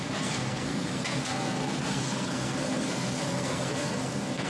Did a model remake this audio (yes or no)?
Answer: yes